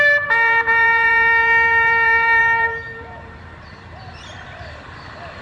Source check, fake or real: fake